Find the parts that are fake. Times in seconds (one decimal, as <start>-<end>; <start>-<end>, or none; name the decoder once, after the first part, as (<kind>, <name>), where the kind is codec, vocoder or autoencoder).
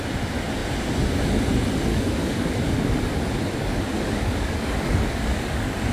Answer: 1.9-3.2 (codec, DAC); 3.6-5.9